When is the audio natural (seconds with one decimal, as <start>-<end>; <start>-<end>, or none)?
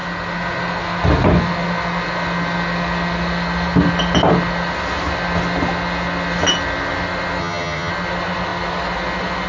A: 0.0-7.4; 7.9-9.5